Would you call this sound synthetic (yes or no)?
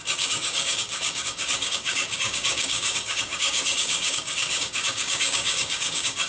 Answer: yes